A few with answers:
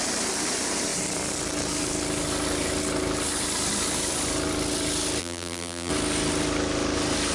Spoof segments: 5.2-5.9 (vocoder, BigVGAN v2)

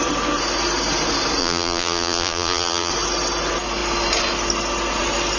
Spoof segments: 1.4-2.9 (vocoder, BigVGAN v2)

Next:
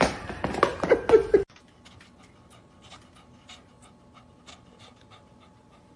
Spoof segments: none

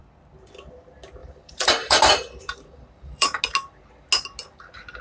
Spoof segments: 1.2-3.4 (vocoder, BigVGAN v2)

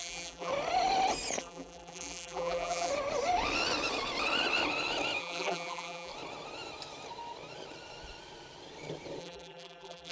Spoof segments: 0.0-0.5 (vocoder, BigVGAN v2); 1.4-2.9; 5.2-6.1; 9.2-10.1

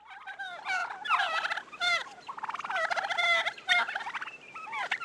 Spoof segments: none